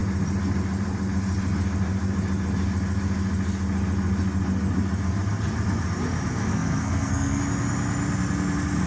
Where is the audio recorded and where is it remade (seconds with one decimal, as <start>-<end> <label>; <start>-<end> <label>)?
0.0-6.5 recorded; 6.5-7.4 remade; 7.4-8.9 recorded

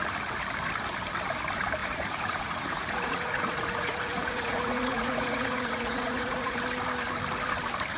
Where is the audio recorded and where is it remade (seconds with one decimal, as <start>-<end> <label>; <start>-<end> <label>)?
0.0-1.8 recorded; 1.8-6.6 remade; 6.6-8.0 recorded

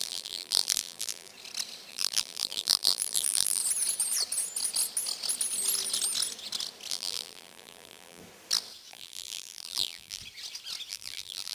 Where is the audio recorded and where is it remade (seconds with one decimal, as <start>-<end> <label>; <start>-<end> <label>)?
0.0-1.3 remade; 1.3-1.9 recorded; 1.9-3.6 remade; 3.6-6.9 recorded; 6.9-8.2 remade; 8.2-8.9 recorded; 8.9-10.2 remade; 10.2-10.9 recorded; 10.9-11.5 remade

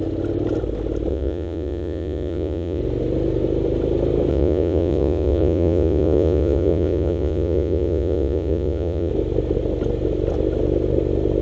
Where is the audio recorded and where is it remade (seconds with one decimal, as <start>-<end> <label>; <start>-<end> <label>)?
0.0-1.1 recorded; 1.1-2.8 remade; 2.8-4.3 recorded; 4.3-9.1 remade; 9.1-11.4 recorded

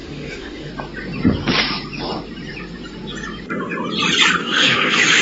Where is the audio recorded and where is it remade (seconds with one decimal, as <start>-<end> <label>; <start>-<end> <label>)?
0.0-0.7 remade; 0.7-4.4 recorded; 4.4-5.2 remade

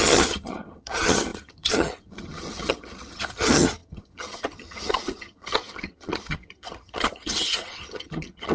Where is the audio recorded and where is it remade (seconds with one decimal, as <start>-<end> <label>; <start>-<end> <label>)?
0.0-8.5 remade

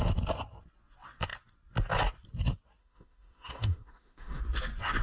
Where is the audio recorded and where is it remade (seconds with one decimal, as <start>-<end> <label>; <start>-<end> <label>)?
0.0-2.8 recorded; 2.8-4.4 remade; 4.4-5.0 recorded